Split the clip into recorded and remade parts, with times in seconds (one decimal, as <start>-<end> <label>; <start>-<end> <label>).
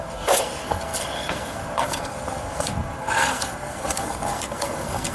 0.0-5.1 remade